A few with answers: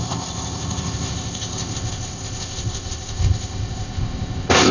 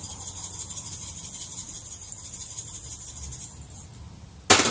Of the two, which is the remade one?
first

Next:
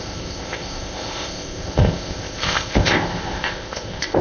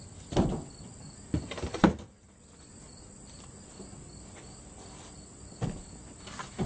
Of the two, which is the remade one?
first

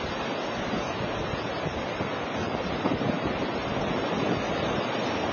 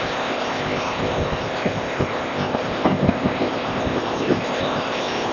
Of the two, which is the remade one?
second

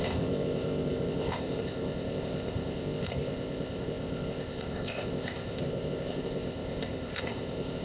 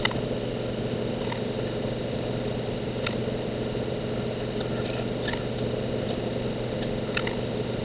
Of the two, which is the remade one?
first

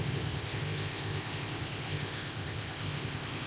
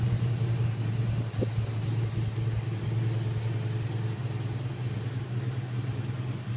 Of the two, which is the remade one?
first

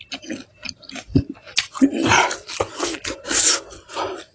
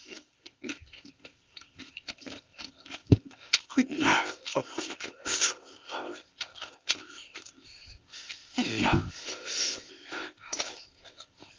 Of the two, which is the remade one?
second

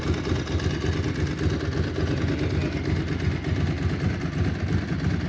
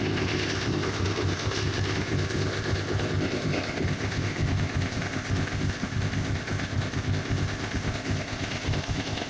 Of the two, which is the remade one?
second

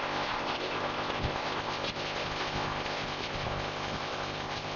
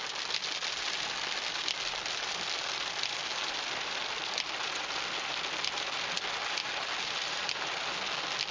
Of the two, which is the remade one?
first